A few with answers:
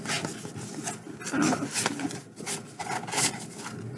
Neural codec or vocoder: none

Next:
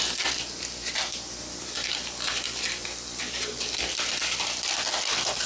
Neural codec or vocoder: none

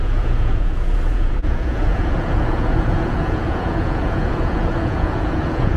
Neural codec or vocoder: vocoder, Vocos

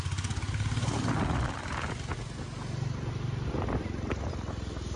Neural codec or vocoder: none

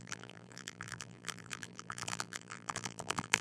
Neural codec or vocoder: vocoder, BigVGAN v2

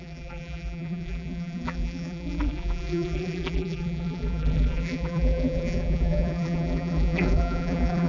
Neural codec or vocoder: vocoder, BigVGAN v2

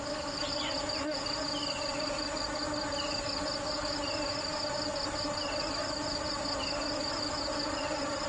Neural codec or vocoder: none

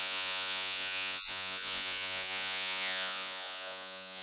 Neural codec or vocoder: vocoder, Vocos